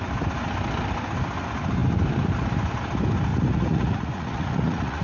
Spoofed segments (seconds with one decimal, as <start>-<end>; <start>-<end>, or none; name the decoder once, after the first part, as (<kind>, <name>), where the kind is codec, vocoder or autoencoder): 3.3-5.0 (vocoder, Vocos)